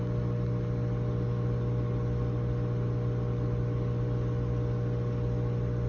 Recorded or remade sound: recorded